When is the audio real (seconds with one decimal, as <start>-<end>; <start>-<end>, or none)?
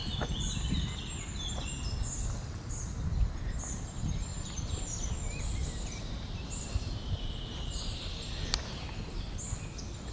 0.0-4.3; 5.1-5.6; 8.2-10.1